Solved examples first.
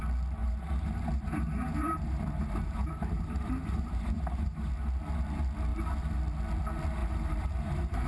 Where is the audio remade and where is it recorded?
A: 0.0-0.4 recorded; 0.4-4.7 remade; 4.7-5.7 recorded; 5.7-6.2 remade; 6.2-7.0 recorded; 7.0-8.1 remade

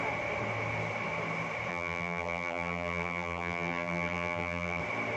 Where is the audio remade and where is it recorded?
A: 0.0-1.7 recorded; 1.7-4.8 remade; 4.8-5.2 recorded

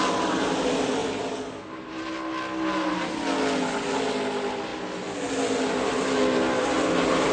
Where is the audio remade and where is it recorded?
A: 0.0-7.3 recorded